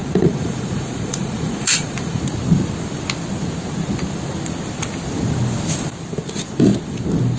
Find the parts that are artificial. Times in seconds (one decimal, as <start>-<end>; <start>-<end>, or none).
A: 0.0-2.2